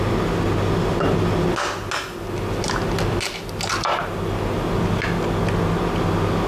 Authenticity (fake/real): real